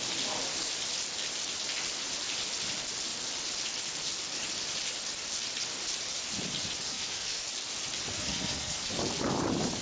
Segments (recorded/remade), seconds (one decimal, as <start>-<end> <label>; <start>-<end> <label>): 0.0-6.9 recorded; 6.9-7.5 remade; 7.5-8.1 recorded; 8.1-8.9 remade; 8.9-9.8 recorded